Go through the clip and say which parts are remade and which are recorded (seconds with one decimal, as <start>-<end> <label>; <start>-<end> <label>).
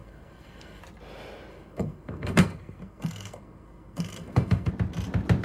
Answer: 0.0-0.8 remade; 0.8-1.5 recorded; 1.5-4.7 remade; 4.7-5.4 recorded